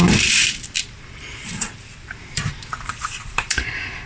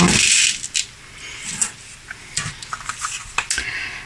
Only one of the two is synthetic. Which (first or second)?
first